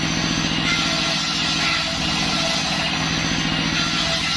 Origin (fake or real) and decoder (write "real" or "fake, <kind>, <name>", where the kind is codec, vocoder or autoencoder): real